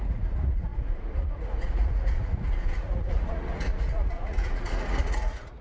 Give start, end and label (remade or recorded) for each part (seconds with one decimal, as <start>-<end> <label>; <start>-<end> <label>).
0.0-5.6 remade